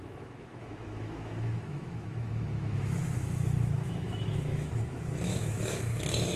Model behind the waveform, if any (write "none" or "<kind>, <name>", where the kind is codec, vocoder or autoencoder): autoencoder, DAC-VAE